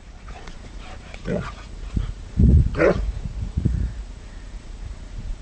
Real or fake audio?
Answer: fake